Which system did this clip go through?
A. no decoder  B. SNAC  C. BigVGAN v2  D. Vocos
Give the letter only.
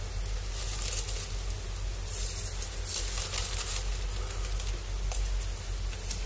A